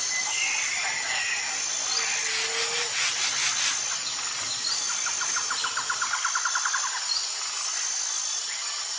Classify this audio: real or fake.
real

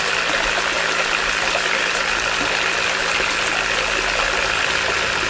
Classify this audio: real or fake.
real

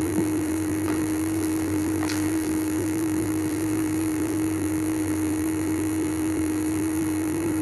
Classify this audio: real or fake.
fake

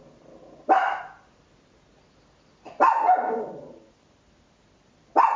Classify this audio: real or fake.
real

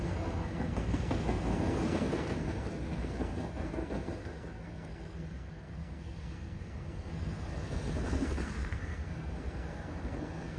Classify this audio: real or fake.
fake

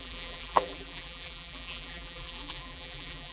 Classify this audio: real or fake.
fake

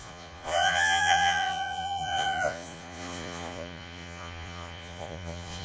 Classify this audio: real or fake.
fake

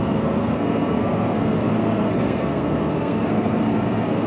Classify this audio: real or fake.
fake